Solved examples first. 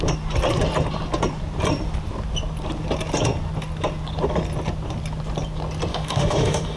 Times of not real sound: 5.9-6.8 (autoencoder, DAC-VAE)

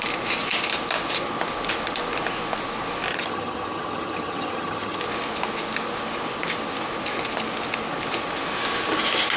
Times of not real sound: 3.1-5.0 (vocoder, HiFi-GAN)

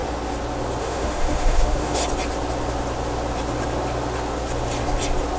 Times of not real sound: 0.8-2.0 (autoencoder, DAC-VAE)

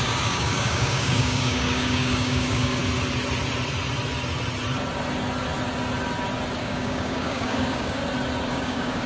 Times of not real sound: 0.0-2.8 (codec, DAC); 6.6-8.0; 8.5-9.1

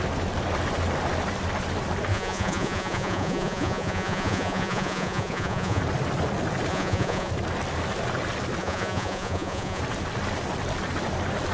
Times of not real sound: 2.1-5.8 (vocoder, Vocos); 6.7-7.3; 8.6-9.8

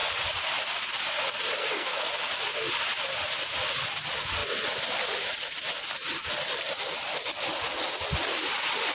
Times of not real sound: 1.6-2.1 (codec, SNAC)

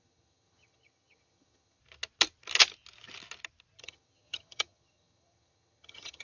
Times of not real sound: 0.0-1.8 (vocoder, HiFi-GAN); 3.8-6.2

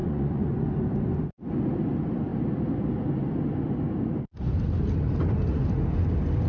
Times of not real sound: 0.0-0.5 (vocoder, Vocos)